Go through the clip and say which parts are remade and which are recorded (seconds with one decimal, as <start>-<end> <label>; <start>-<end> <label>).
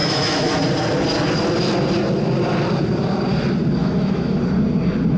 0.0-0.5 remade; 0.5-3.8 recorded; 3.8-4.4 remade; 4.4-5.2 recorded